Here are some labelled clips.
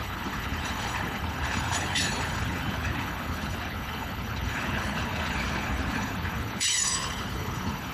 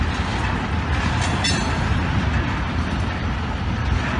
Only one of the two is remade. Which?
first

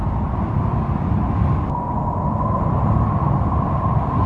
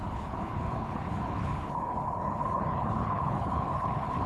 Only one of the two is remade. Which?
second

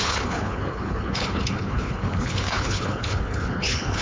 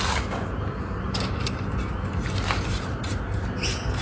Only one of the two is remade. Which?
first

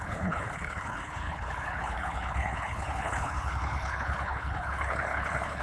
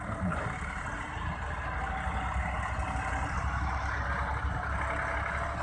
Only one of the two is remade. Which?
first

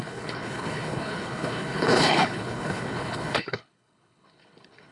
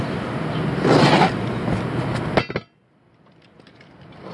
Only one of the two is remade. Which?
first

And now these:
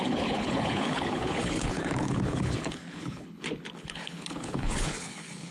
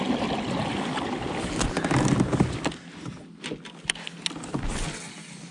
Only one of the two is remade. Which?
first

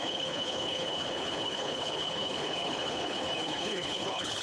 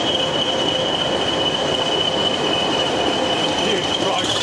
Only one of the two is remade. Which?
first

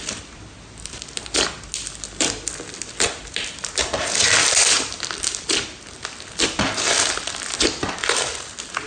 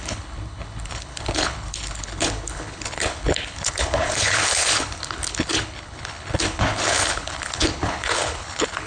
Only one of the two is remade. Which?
second